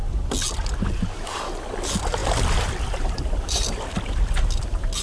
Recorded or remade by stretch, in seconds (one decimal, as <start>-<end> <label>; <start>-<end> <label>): 0.0-2.2 recorded; 2.2-4.3 remade; 4.3-5.0 recorded